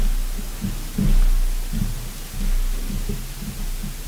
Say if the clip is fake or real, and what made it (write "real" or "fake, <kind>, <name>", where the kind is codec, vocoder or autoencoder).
real